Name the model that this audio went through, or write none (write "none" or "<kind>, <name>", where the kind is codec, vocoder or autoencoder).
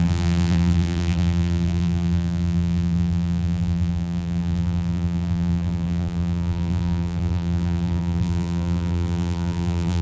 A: vocoder, BigVGAN v2